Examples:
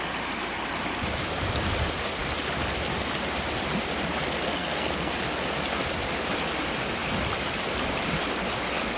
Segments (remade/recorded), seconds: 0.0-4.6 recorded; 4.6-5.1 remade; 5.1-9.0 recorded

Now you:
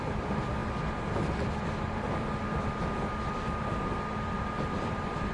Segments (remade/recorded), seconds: 0.0-0.6 remade; 0.6-1.8 recorded; 1.8-5.3 remade